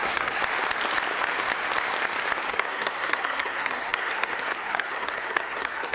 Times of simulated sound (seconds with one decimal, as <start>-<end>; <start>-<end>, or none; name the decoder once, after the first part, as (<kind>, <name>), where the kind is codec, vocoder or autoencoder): 0.0-0.4 (codec, SNAC); 2.5-5.9